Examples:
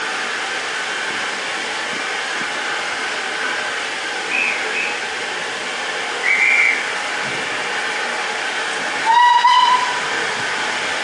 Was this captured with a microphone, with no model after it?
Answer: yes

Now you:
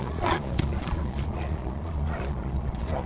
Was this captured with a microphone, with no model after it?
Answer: no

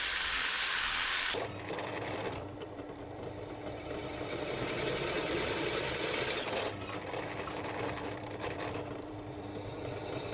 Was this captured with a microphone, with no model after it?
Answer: no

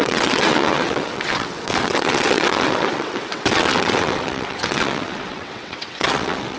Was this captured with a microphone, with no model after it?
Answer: no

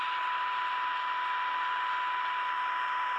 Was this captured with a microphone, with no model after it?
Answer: yes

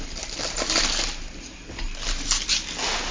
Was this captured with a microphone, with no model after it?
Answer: yes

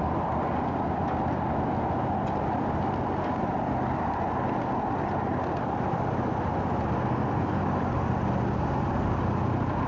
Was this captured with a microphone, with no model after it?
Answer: yes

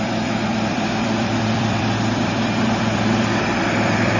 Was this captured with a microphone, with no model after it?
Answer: no